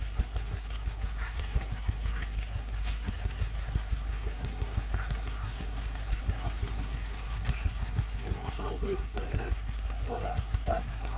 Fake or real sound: fake